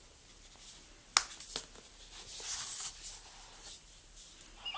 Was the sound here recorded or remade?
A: recorded